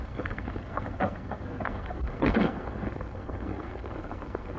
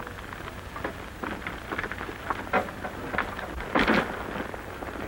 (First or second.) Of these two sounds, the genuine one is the second